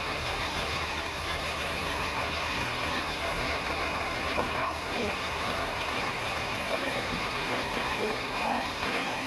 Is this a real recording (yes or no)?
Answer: no